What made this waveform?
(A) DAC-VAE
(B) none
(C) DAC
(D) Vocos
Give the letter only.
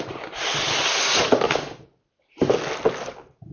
B